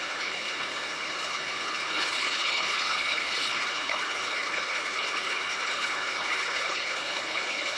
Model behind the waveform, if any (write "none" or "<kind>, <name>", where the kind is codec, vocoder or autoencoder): codec, HILCodec